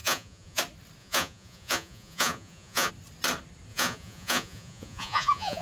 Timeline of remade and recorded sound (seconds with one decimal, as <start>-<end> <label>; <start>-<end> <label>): 0.0-0.6 remade; 0.6-1.0 recorded; 1.0-2.9 remade; 2.9-3.7 recorded; 3.7-5.6 remade